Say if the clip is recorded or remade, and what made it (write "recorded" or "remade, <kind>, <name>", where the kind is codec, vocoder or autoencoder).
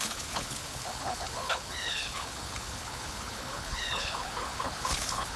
remade, codec, HILCodec